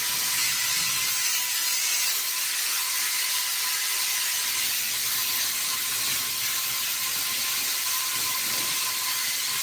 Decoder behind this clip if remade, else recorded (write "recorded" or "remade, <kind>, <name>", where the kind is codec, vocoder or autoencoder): recorded